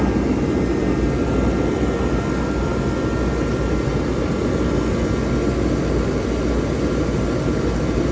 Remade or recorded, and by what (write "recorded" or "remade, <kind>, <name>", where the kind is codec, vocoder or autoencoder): recorded